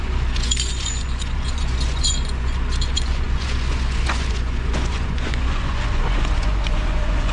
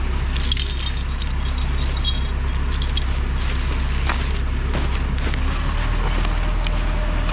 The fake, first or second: first